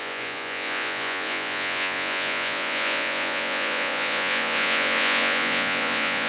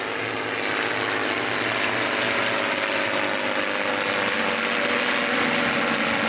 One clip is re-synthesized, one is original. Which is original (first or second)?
second